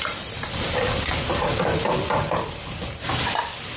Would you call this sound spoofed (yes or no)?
yes